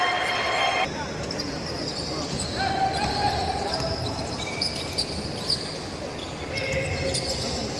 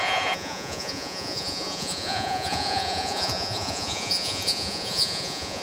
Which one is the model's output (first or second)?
second